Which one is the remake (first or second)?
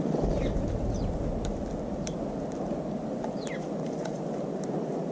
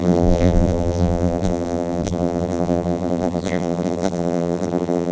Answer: second